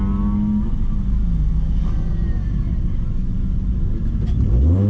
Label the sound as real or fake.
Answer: real